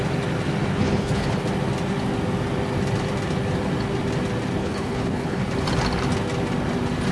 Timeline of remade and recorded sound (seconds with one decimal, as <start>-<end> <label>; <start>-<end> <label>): 0.0-0.7 recorded; 0.7-1.4 remade; 1.4-4.6 recorded; 4.6-5.5 remade; 5.5-7.1 recorded